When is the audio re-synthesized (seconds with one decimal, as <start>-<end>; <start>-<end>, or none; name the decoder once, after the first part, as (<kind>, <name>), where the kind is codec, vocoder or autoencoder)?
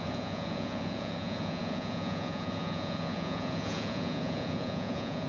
0.0-5.3 (vocoder, Vocos)